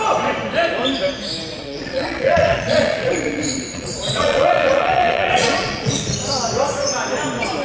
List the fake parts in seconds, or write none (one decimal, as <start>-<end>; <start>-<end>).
1.5-6.1